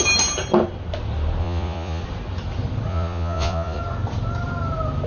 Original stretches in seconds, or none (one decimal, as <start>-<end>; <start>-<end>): 0.0-1.4; 2.0-2.9; 3.8-5.1